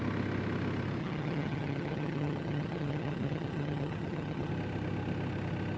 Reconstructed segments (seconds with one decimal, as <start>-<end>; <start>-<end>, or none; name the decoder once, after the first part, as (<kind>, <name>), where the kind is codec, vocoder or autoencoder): 1.0-4.5 (vocoder, HiFi-GAN)